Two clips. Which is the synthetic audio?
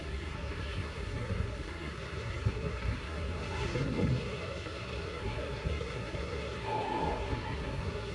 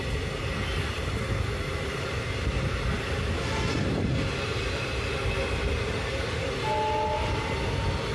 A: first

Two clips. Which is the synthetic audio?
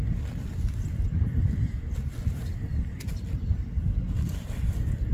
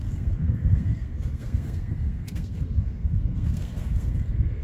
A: second